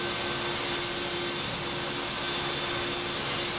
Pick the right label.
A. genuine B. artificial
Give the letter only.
A